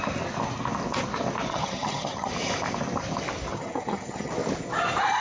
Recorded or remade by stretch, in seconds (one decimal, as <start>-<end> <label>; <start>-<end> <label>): 0.0-1.5 recorded; 1.5-2.3 remade; 2.3-3.5 recorded; 3.5-4.3 remade; 4.3-5.2 recorded